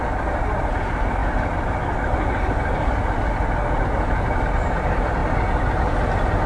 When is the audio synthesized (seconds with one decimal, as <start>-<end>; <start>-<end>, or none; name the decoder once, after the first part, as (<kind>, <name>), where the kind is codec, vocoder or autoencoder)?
none